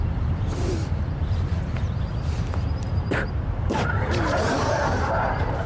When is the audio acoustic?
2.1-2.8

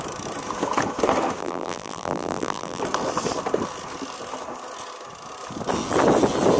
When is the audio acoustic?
0.0-1.4; 2.8-6.6

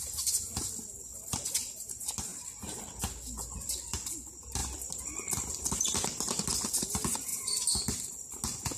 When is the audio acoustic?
0.0-8.8

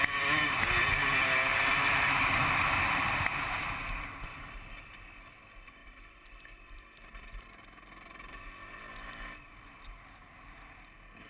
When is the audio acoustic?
0.0-1.5; 3.2-5.8; 7.4-11.3

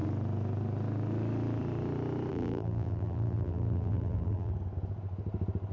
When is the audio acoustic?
0.0-2.3; 4.5-5.7

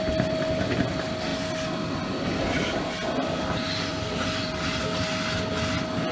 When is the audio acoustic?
0.0-3.9; 4.5-6.1

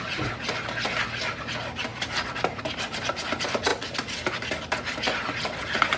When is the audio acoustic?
0.0-1.9; 3.1-6.0

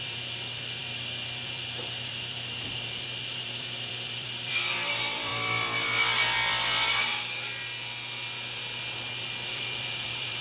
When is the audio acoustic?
5.3-9.5